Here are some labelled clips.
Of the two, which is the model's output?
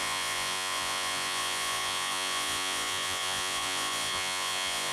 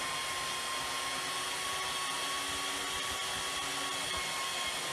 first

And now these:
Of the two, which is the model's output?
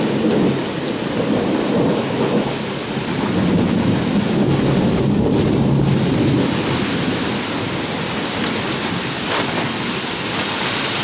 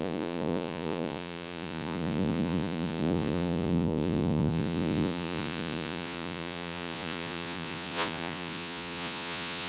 second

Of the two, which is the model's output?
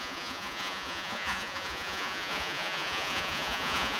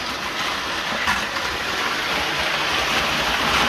first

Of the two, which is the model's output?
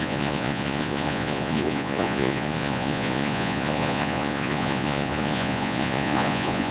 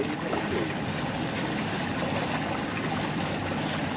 first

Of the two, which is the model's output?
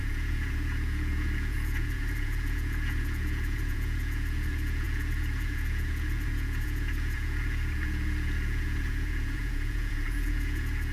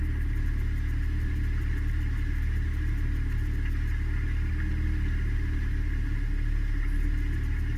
first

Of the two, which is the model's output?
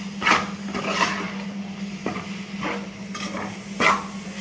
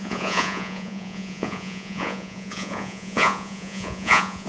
second